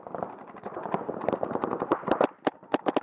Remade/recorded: recorded